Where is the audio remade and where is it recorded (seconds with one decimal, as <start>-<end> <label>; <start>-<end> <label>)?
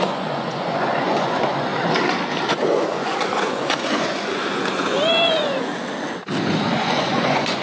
0.0-1.7 remade; 1.7-2.5 recorded; 2.5-5.7 remade; 5.7-6.7 recorded; 6.7-7.6 remade